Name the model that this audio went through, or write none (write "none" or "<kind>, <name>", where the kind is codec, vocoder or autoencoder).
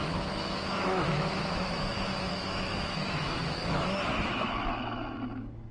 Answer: autoencoder, DAC-VAE